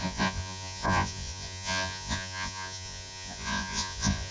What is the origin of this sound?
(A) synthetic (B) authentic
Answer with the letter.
A